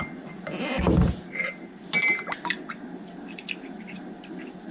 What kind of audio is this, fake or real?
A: real